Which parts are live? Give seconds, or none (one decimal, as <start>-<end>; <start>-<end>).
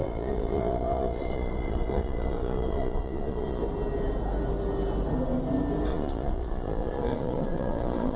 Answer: 3.6-5.9